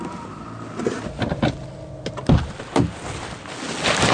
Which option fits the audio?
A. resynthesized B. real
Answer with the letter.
B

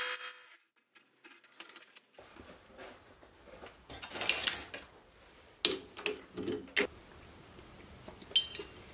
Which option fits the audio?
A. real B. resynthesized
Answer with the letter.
A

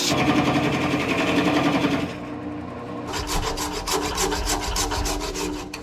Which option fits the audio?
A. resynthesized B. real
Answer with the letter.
B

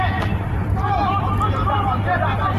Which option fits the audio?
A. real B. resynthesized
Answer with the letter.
A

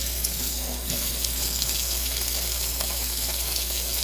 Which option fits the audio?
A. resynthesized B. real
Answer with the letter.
A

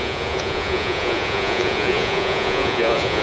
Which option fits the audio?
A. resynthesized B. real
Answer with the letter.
A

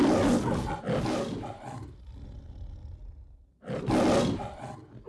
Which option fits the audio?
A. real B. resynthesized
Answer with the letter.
A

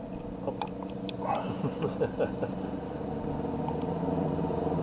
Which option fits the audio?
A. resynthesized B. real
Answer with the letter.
B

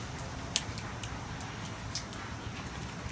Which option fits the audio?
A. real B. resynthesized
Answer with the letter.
A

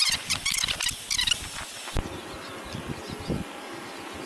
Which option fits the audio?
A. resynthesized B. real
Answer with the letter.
B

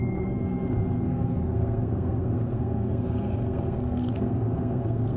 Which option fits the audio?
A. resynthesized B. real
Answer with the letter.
A